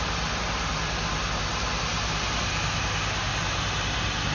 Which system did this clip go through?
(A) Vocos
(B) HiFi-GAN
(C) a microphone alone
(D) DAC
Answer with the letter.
C